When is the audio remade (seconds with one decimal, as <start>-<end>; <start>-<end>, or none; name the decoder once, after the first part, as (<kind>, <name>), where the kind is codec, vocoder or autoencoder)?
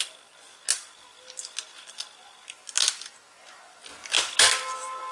none